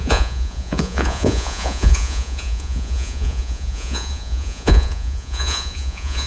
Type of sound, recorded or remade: remade